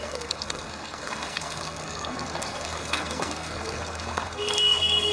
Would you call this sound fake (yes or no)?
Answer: yes